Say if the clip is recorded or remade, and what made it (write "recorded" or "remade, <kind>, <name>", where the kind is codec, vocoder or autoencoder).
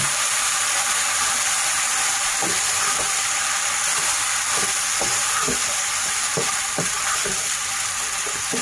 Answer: remade, vocoder, BigVGAN v2